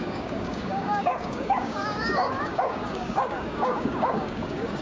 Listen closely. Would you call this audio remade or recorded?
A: remade